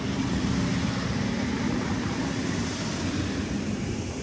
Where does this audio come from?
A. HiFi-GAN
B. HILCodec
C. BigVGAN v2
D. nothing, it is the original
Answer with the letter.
C